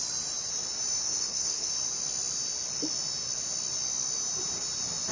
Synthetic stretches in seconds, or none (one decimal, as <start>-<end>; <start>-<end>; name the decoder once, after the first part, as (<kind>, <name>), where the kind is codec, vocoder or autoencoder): 1.0-1.7 (codec, SNAC)